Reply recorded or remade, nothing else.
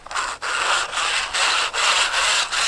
recorded